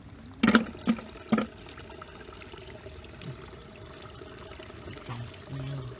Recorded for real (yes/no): yes